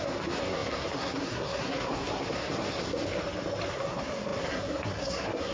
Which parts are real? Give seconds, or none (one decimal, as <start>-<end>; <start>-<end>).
3.0-3.7